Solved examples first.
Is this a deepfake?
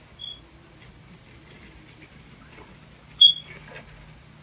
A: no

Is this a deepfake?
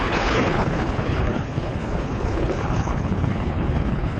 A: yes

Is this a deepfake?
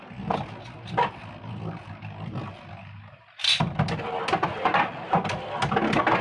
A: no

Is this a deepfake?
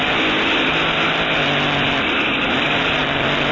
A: no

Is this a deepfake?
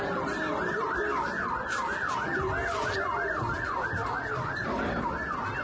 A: no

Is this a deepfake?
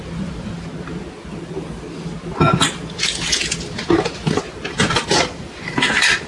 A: no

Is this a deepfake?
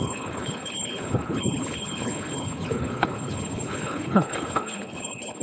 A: yes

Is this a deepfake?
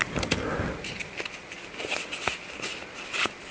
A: no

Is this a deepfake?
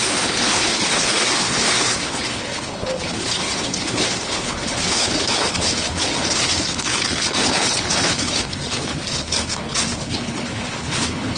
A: yes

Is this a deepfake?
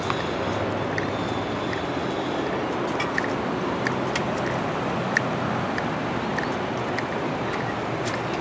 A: no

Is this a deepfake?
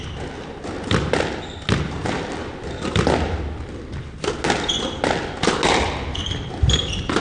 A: no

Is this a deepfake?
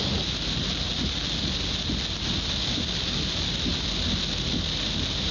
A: no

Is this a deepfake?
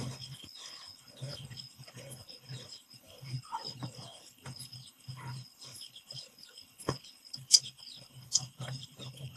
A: yes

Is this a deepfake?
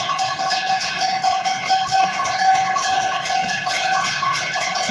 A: yes